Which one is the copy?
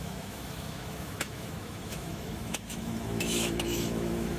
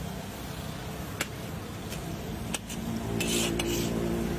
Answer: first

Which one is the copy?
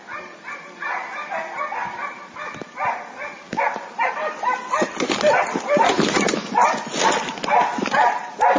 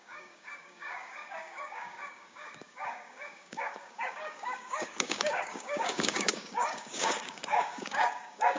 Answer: second